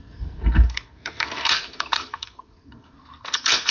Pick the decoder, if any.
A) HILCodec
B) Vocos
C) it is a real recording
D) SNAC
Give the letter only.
D